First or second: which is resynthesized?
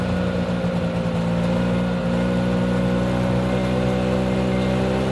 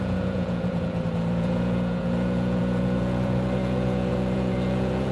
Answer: second